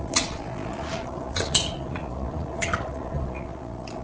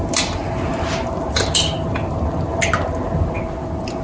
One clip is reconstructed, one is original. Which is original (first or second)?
second